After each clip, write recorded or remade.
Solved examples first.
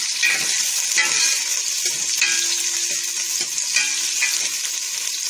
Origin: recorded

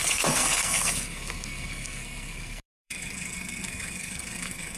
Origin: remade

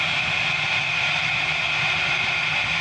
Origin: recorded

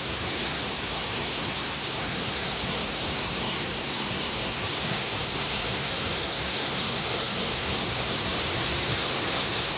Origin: remade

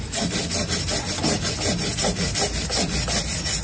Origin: recorded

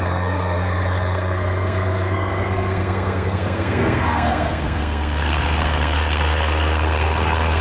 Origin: remade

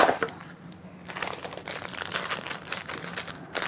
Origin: recorded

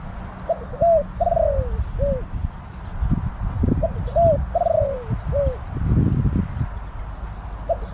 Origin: recorded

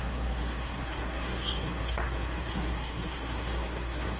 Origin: remade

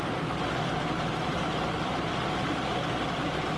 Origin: recorded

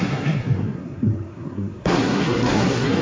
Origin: remade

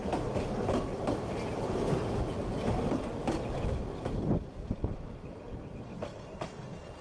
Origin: recorded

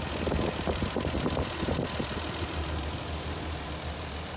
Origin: recorded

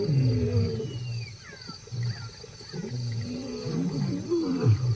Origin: recorded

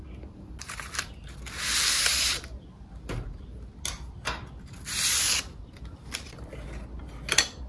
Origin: recorded